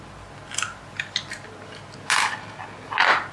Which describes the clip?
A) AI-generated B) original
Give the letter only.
B